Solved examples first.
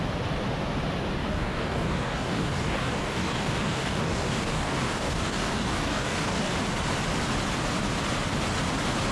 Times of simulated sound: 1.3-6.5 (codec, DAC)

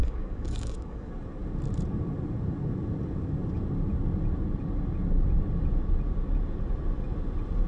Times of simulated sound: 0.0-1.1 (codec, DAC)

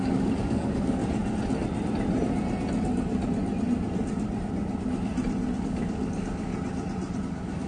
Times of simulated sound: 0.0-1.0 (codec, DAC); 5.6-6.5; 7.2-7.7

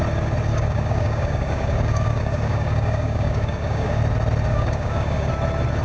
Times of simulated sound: 0.5-4.0 (codec, DAC); 4.5-5.3

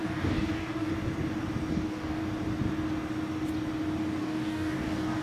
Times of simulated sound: 0.0-0.9 (codec, DAC); 1.7-2.2; 4.2-5.2

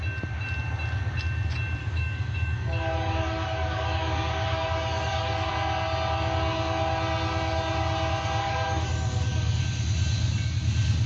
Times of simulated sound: 1.8-5.5 (codec, DAC); 8.4-9.6